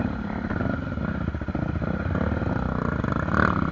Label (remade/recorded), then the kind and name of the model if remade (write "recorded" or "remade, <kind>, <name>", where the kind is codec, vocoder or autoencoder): recorded